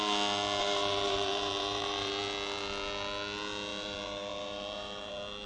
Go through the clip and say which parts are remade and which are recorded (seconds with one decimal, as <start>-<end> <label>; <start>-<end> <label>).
0.0-0.6 recorded; 0.6-2.1 remade; 2.1-3.7 recorded; 3.7-5.1 remade; 5.1-5.5 recorded